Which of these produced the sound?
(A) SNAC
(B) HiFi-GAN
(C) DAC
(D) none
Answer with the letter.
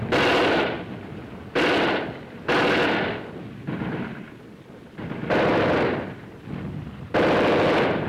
D